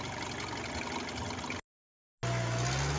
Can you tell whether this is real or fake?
real